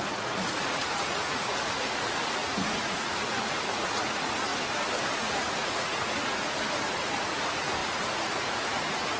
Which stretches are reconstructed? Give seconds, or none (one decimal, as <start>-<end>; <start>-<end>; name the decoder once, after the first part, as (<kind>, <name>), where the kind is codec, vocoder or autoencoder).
0.0-4.5 (vocoder, Vocos); 5.2-9.2